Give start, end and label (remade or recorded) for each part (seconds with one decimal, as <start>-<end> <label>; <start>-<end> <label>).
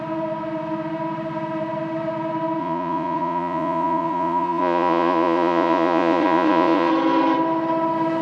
0.0-2.6 recorded; 2.6-6.9 remade; 6.9-8.2 recorded